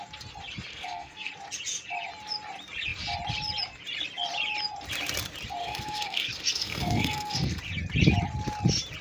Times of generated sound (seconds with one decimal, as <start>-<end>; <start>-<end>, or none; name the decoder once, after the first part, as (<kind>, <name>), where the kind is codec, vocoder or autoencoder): 0.7-1.3 (codec, SNAC); 5.6-7.6